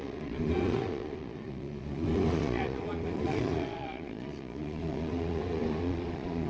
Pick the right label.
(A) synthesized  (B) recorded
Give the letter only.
A